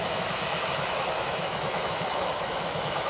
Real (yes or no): no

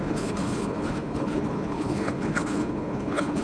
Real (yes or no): no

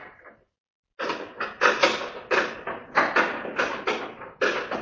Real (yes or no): yes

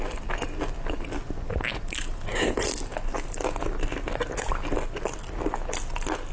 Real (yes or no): yes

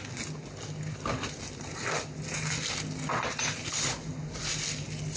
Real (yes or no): yes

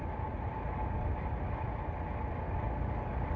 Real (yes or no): yes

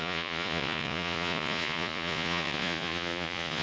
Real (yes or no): no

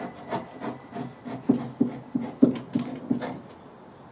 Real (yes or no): yes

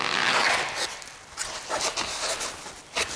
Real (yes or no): yes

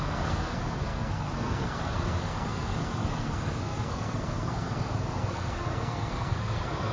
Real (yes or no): no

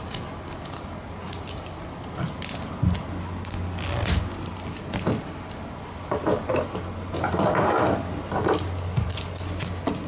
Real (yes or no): yes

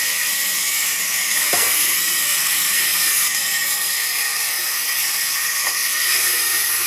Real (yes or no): no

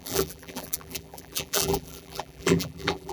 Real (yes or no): no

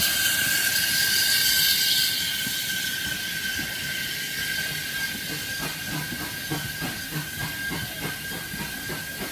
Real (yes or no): yes